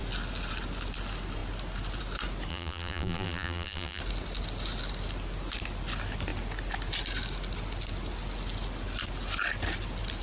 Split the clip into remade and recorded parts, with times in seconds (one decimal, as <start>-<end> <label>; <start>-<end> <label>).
0.0-2.5 recorded; 2.5-4.0 remade; 4.0-10.2 recorded